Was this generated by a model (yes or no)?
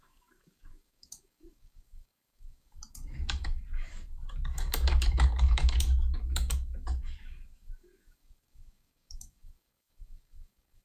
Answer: yes